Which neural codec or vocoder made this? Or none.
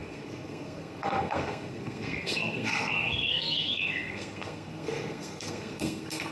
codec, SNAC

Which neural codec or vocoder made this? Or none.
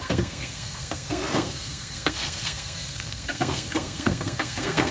codec, SNAC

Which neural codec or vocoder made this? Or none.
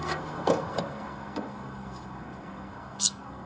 codec, SNAC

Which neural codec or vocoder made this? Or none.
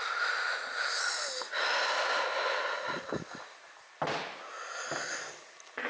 none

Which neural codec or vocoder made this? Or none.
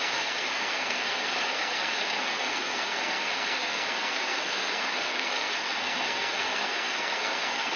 codec, SNAC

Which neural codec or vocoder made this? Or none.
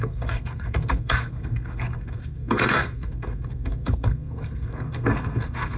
codec, SNAC